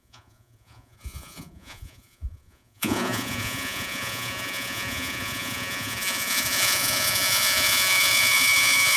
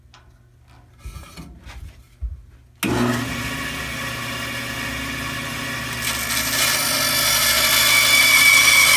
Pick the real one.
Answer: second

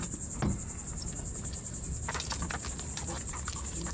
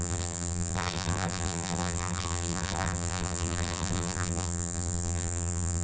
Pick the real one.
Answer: first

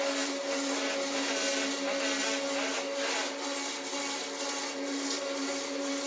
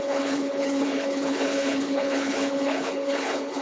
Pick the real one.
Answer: first